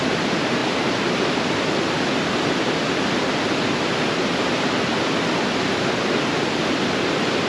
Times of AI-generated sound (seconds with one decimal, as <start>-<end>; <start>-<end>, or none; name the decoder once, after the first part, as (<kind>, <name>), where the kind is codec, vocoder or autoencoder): none